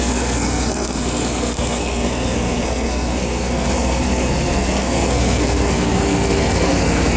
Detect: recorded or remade remade